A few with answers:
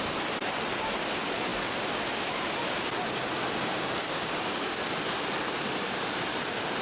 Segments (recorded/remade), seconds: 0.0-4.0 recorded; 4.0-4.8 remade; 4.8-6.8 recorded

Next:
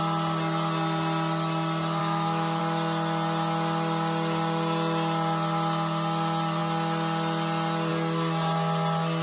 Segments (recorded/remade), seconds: 0.0-2.0 recorded; 2.0-2.6 remade; 2.6-9.2 recorded

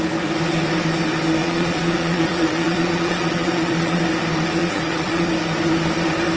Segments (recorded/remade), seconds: 0.0-1.4 recorded; 1.4-4.0 remade; 4.0-4.6 recorded; 4.6-5.3 remade; 5.3-6.4 recorded

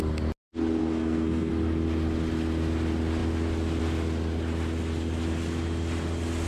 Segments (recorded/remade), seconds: 0.0-0.8 recorded; 0.8-1.5 remade; 1.5-6.5 recorded